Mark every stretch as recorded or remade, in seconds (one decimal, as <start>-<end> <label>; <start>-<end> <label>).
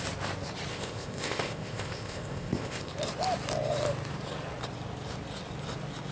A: 0.0-0.7 recorded; 0.7-2.9 remade; 2.9-6.1 recorded